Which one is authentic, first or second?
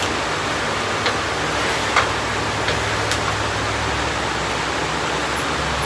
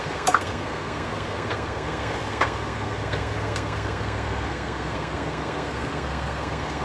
first